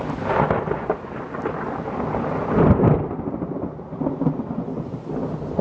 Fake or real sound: real